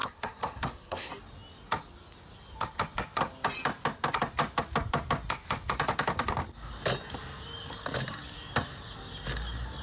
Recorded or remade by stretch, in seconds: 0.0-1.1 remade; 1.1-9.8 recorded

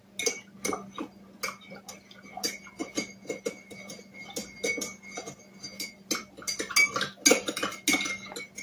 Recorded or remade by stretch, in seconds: 0.0-8.6 recorded

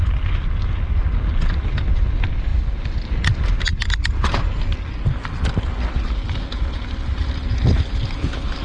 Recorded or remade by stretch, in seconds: 0.0-8.6 recorded

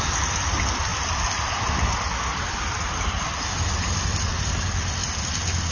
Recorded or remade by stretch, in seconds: 0.0-5.7 recorded